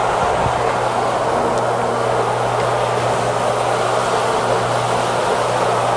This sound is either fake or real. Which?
real